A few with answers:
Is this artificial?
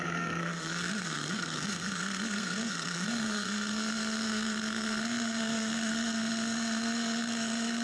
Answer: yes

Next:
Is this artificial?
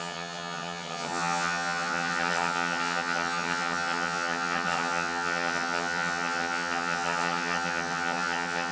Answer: yes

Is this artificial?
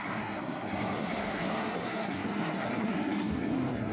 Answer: yes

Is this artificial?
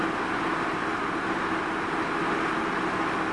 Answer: no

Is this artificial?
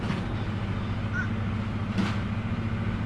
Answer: no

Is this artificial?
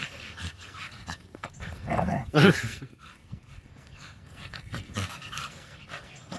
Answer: yes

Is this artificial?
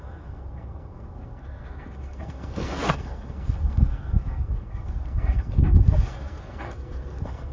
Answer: yes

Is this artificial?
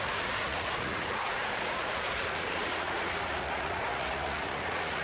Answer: yes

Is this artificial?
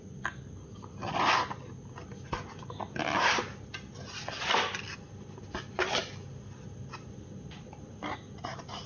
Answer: no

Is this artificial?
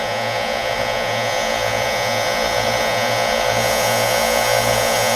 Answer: yes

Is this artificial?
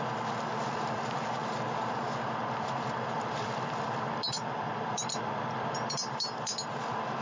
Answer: yes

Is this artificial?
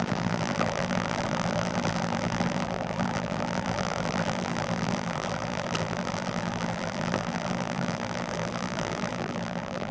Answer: yes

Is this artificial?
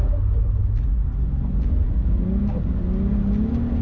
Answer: no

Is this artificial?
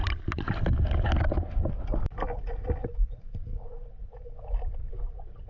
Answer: no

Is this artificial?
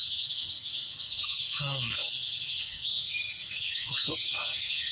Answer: yes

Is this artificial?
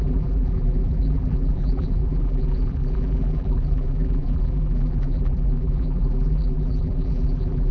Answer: yes